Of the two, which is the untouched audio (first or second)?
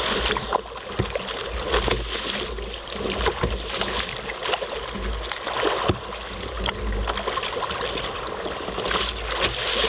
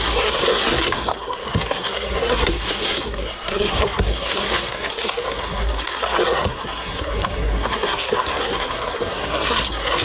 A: first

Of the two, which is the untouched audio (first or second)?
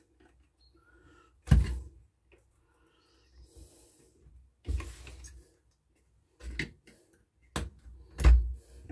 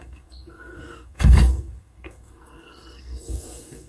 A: first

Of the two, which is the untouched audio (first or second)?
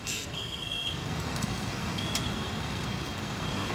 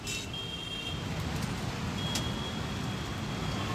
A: second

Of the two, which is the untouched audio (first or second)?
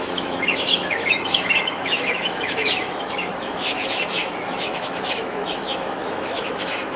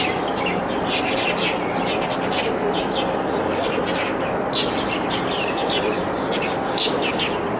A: second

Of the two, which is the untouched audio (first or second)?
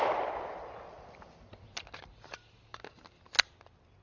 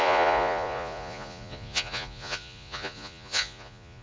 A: first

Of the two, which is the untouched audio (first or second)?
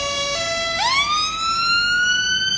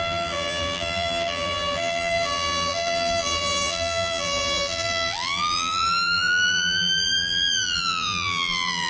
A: first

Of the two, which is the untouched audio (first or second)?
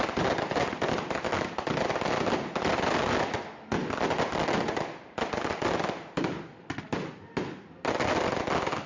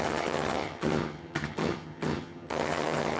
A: first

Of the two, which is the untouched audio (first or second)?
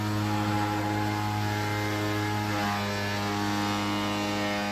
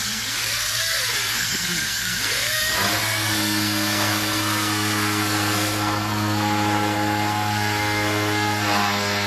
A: first